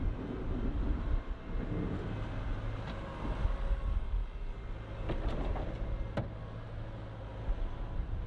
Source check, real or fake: real